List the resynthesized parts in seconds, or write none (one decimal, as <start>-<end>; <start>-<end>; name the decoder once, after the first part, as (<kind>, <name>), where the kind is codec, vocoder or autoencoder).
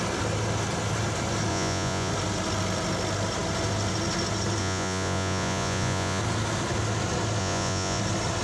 1.5-2.1 (vocoder, Vocos); 4.6-6.2; 7.4-8.0